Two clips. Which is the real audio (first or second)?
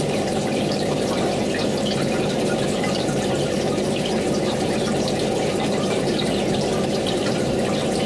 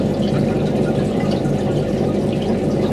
second